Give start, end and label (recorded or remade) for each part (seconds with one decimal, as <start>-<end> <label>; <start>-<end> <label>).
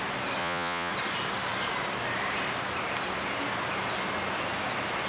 0.0-0.4 recorded; 0.4-0.9 remade; 0.9-5.1 recorded